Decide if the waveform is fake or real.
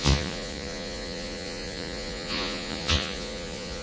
fake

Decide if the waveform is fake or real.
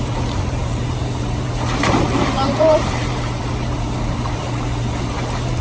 fake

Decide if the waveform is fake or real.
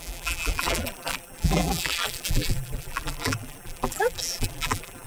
fake